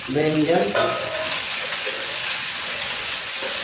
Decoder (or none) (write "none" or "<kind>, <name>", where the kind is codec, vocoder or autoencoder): vocoder, Vocos